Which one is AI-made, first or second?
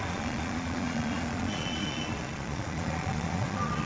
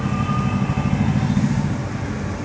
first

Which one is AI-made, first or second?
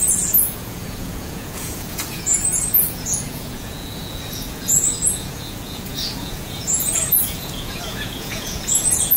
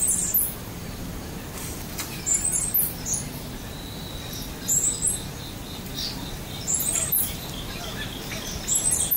first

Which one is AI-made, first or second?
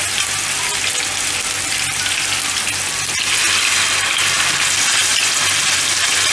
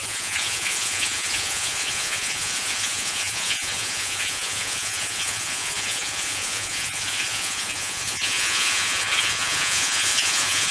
second